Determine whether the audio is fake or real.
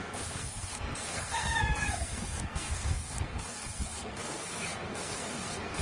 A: fake